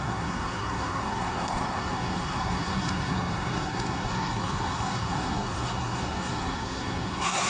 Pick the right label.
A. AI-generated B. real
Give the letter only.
A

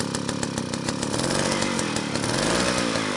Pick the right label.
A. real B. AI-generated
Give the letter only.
A